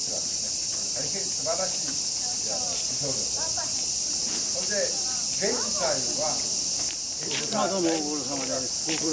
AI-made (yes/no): no